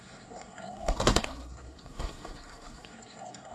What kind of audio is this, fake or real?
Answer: fake